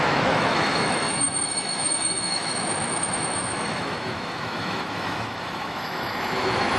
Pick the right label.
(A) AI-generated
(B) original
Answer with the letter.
A